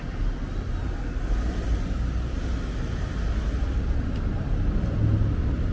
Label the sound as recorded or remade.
recorded